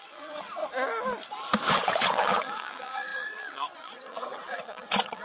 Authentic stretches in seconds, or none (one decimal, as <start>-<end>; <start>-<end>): 0.6-1.7